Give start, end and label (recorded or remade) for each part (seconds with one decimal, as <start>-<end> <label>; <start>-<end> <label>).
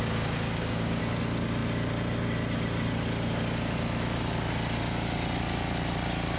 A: 0.0-1.0 remade; 1.0-6.4 recorded